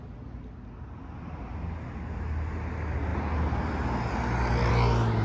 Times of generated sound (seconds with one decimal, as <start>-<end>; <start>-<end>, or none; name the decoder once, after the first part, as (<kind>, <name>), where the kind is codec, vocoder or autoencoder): none